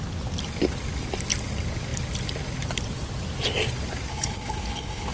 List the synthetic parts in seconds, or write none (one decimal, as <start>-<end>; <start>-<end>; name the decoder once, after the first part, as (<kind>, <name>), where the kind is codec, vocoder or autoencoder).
4.1-5.1 (codec, HILCodec)